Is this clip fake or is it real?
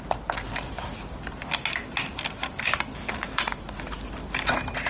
real